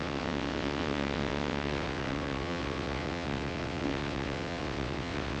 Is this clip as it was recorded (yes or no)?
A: no